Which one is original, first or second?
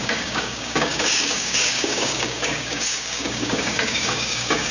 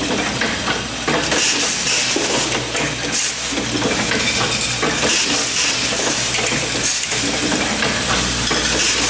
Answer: second